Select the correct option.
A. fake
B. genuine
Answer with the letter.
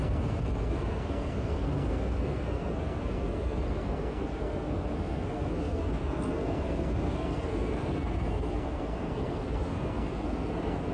A